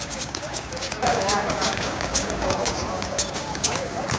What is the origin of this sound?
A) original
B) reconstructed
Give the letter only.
B